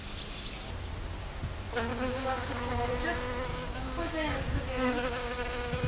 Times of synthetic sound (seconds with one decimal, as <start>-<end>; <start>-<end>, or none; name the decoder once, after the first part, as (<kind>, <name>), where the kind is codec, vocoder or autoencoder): 1.9-2.9 (codec, DAC); 3.5-5.9